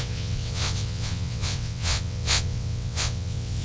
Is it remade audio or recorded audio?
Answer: remade